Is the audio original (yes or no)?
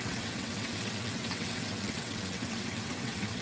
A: no